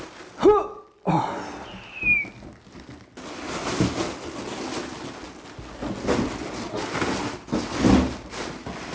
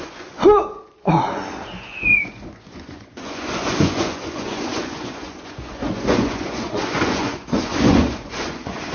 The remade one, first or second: second